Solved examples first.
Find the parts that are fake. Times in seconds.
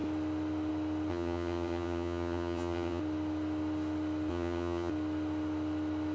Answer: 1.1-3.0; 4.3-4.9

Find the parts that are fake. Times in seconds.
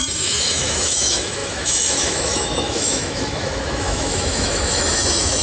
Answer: 0.0-5.4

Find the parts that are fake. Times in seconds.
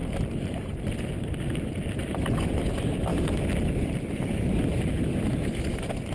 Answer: 0.0-1.4; 3.1-4.9